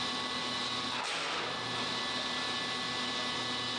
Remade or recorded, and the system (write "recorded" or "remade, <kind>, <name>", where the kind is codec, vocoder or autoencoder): recorded